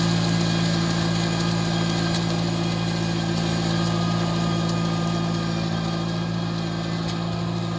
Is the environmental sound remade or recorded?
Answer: recorded